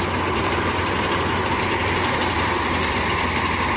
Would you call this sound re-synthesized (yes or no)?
yes